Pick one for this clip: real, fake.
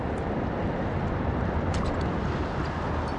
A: real